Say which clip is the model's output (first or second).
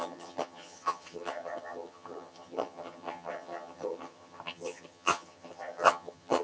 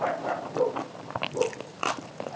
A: first